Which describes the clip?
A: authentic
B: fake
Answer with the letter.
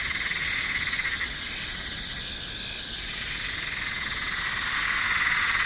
A